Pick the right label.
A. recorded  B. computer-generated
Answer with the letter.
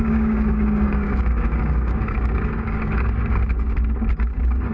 B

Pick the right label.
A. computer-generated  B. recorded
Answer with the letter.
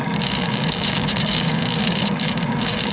A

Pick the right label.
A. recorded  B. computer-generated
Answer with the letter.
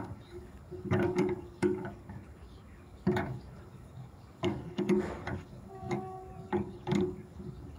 B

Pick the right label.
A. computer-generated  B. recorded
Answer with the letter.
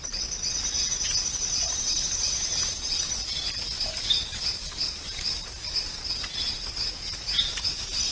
B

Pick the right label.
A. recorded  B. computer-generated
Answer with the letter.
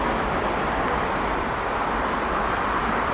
A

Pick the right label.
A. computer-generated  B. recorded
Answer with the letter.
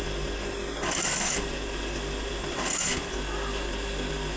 B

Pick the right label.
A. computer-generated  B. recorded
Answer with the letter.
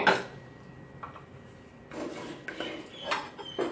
B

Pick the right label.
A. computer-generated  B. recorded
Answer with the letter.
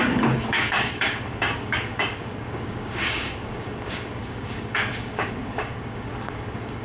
A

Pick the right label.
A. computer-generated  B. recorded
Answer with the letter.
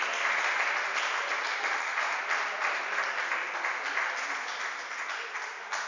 B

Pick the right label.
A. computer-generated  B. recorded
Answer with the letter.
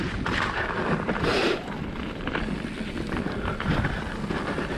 B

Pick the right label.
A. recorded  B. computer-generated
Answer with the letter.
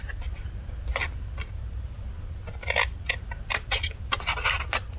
A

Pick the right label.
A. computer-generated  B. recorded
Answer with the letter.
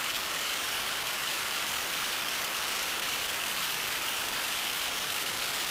A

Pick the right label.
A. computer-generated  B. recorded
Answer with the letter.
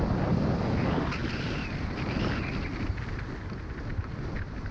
B